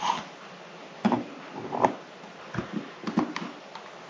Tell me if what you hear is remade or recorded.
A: recorded